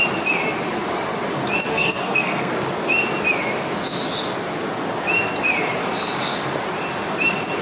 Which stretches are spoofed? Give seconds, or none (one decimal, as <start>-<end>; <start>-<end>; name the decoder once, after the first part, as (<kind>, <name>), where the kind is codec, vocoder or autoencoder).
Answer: 1.7-2.5 (codec, SNAC)